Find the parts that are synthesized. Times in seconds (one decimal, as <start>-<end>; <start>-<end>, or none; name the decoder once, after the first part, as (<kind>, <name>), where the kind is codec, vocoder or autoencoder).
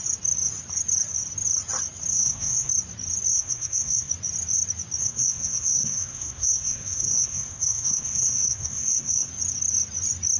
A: 2.1-2.7 (codec, SNAC); 3.3-4.1; 5.0-9.3